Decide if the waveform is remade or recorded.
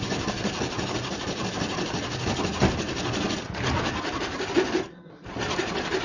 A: recorded